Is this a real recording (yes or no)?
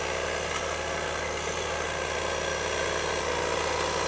yes